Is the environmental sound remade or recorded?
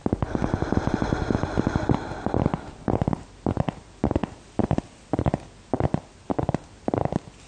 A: recorded